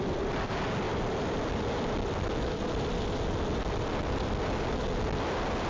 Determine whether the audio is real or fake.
real